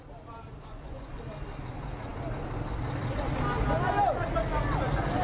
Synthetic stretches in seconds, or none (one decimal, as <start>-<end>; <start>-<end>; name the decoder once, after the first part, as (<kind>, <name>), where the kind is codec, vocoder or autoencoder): 0.7-1.2 (vocoder, Vocos)

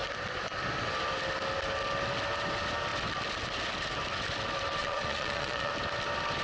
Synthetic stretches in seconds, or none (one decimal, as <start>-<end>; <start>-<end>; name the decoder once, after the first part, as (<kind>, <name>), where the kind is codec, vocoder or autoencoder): 4.8-5.7 (vocoder, Vocos)